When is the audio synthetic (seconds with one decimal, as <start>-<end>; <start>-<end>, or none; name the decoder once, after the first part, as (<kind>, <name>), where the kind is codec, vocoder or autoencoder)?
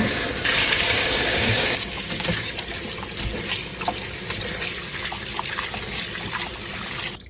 0.6-2.5 (codec, DAC)